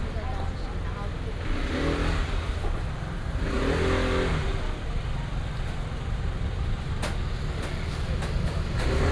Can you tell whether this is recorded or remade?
recorded